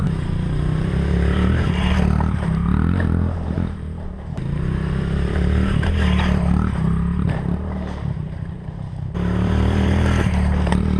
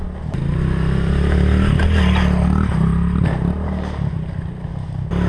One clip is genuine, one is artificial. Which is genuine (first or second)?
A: second